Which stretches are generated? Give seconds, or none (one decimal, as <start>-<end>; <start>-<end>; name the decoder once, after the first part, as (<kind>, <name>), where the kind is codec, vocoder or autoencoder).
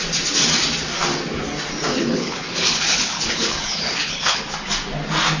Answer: 1.9-4.4 (codec, HILCodec)